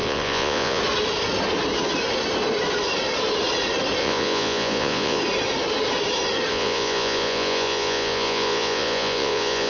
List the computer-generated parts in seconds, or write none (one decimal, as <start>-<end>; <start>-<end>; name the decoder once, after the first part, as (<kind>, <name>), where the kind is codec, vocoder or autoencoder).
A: 0.0-0.8 (vocoder, Vocos); 4.0-5.2; 6.5-9.7